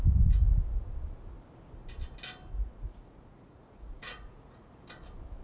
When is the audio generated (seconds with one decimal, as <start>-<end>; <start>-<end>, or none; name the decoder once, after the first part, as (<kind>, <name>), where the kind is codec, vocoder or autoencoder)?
2.5-4.7 (vocoder, Vocos)